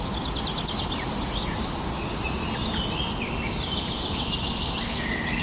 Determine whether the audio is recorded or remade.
recorded